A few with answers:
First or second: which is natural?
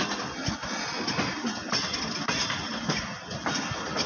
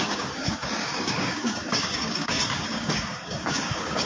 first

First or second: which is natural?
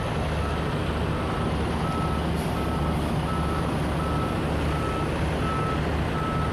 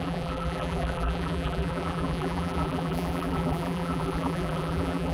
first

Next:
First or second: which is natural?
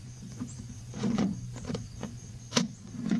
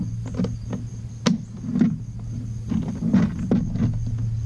second